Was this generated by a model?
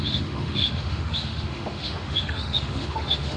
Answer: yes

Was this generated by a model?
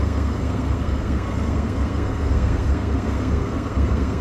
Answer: yes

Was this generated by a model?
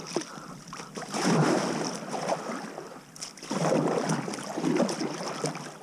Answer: no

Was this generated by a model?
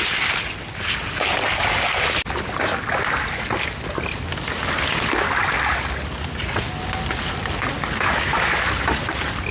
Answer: no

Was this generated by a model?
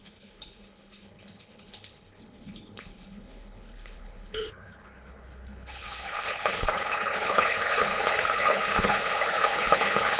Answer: yes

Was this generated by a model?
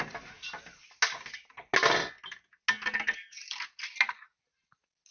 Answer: no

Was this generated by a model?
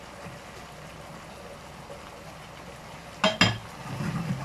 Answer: no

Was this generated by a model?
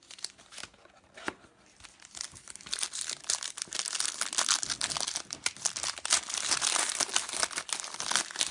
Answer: no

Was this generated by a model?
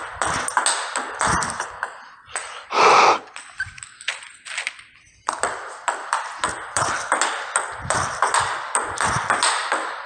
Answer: no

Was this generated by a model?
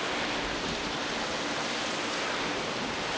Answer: no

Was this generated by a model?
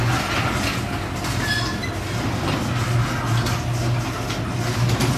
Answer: no